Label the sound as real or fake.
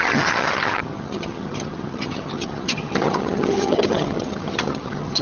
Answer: fake